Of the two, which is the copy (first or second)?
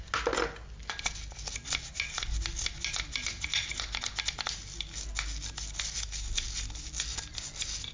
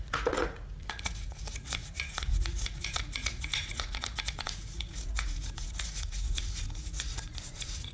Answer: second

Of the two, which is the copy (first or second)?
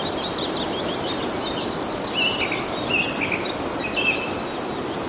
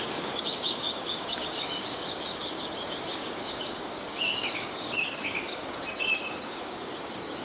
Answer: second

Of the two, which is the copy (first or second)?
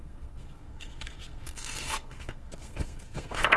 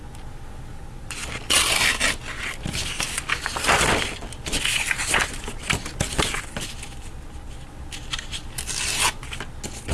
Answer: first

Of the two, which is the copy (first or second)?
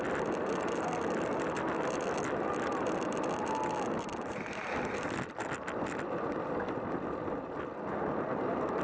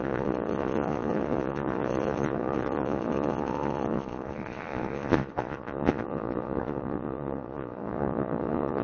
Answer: second